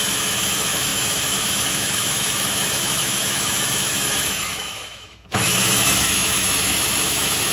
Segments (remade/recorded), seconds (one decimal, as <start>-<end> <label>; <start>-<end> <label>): 0.0-7.5 remade